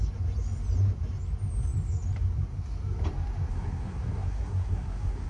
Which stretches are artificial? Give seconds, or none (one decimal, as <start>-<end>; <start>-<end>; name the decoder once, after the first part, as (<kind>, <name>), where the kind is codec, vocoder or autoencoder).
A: 3.5-5.3 (codec, SNAC)